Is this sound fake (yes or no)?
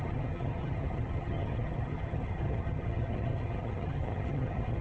yes